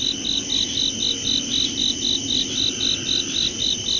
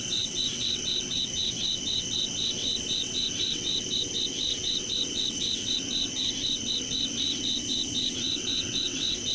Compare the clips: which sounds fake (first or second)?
second